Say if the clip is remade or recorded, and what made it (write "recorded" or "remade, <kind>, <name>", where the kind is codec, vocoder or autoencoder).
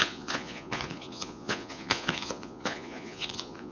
remade, vocoder, Vocos